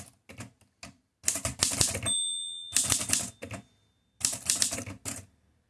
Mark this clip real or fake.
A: real